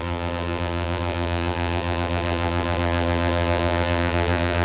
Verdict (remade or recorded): remade